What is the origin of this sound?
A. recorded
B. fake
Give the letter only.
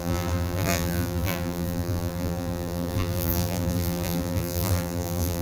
B